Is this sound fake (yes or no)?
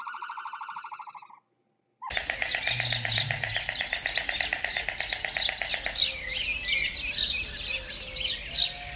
no